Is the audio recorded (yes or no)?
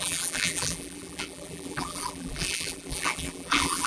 no